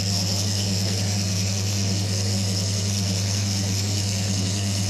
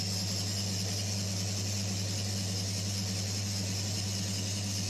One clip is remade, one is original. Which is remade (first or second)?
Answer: first